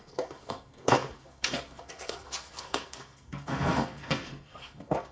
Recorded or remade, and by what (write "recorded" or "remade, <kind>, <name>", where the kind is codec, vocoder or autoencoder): remade, codec, SNAC